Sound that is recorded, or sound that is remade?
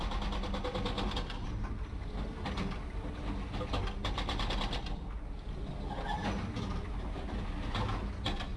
recorded